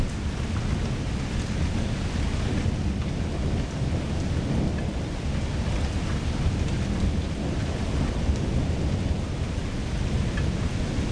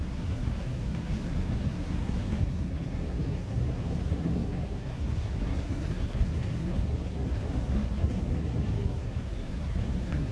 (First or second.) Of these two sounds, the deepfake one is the second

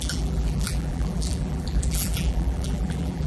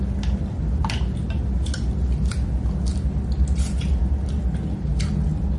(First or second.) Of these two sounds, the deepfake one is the first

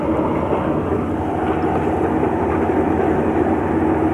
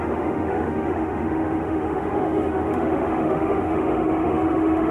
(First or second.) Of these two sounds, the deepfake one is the second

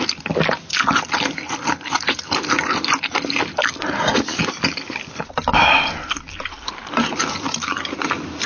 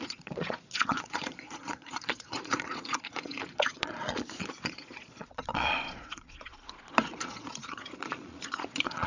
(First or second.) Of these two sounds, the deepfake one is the second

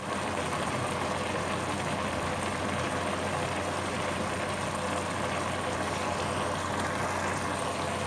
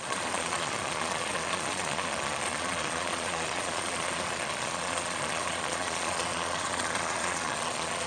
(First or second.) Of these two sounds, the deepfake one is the second